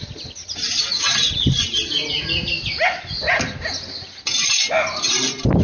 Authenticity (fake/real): real